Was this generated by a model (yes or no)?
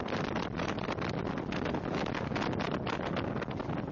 no